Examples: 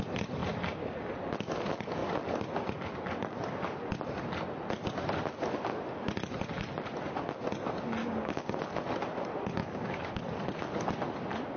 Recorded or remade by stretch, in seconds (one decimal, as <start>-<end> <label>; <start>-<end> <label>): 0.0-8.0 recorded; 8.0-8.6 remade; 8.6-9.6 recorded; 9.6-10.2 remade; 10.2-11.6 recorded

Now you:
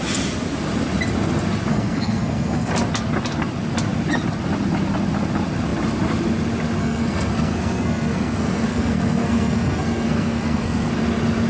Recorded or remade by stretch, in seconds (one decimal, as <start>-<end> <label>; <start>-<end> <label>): 0.0-1.7 recorded; 1.7-2.7 remade; 2.7-6.8 recorded; 6.8-10.9 remade; 10.9-11.5 recorded

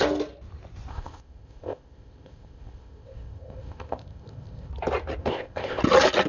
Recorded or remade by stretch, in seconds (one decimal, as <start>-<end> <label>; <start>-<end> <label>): 0.0-0.9 recorded; 0.9-4.7 remade; 4.7-5.2 recorded; 5.2-5.8 remade; 5.8-6.3 recorded